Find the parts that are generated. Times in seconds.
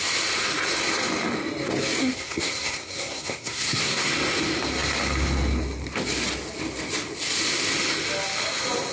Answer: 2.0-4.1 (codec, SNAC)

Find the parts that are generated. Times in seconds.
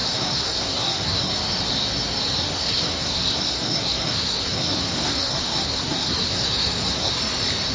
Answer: 0.0-1.3 (codec, SNAC); 2.5-7.1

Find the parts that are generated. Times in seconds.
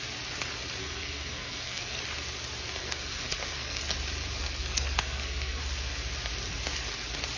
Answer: 0.8-2.0 (codec, SNAC); 2.8-3.8; 4.4-5.6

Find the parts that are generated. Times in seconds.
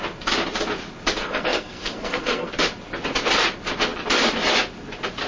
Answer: 1.2-2.5 (codec, SNAC)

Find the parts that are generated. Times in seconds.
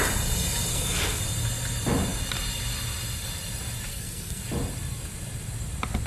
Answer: 0.7-1.2 (codec, SNAC); 3.9-4.4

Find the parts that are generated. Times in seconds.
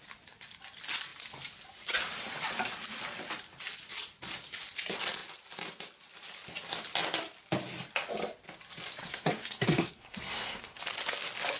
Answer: 9.0-10.8 (codec, SNAC)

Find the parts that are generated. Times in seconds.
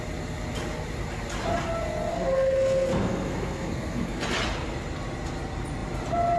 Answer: 2.1-4.2 (codec, SNAC)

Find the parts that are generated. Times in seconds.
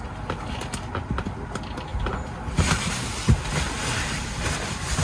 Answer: none